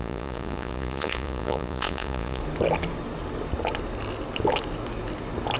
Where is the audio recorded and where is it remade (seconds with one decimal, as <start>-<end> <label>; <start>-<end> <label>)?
0.0-2.4 remade; 2.4-5.6 recorded